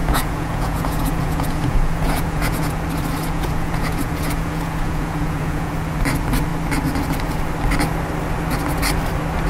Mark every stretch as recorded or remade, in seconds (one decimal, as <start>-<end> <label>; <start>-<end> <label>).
0.0-2.8 remade; 2.8-3.2 recorded; 3.2-5.7 remade; 5.7-9.5 recorded